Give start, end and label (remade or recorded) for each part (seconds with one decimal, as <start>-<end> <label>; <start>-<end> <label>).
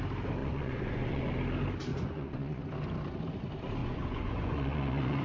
0.0-0.4 recorded; 0.4-1.3 remade; 1.3-1.9 recorded; 1.9-2.6 remade; 2.6-3.8 recorded; 3.8-5.2 remade